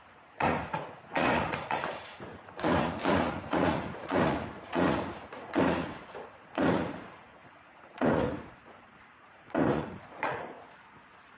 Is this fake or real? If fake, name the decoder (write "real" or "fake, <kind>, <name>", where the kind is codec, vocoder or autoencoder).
fake, vocoder, Vocos